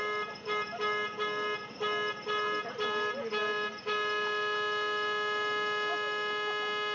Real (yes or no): yes